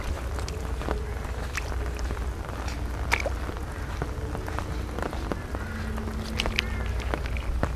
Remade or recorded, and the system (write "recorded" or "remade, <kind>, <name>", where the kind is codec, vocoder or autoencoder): recorded